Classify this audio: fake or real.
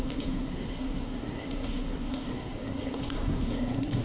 fake